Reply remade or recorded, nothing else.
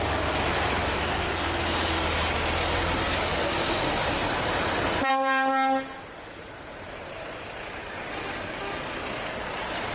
recorded